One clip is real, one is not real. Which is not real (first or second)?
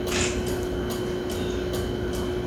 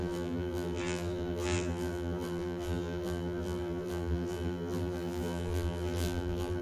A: second